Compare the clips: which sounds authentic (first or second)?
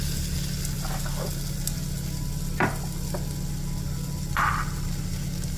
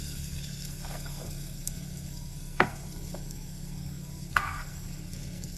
first